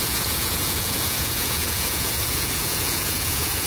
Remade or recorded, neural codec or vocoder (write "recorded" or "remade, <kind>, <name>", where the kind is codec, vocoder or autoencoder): remade, vocoder, Vocos